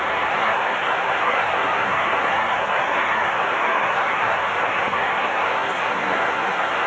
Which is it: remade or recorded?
remade